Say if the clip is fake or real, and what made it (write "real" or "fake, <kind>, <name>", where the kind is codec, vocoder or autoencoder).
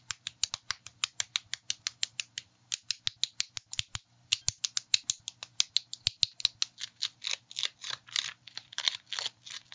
real